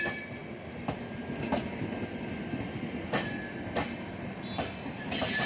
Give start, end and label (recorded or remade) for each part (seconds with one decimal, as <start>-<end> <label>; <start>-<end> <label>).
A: 0.0-5.5 recorded